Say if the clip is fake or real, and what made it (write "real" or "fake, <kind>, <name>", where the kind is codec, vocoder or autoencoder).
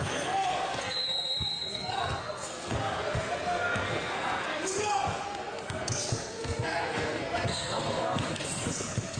fake, codec, SNAC